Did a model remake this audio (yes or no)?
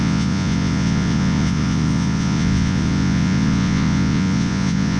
yes